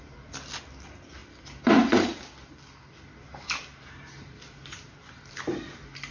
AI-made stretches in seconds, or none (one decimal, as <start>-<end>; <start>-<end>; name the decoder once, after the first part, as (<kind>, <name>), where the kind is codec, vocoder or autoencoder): none